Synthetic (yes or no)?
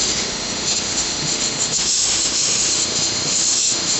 yes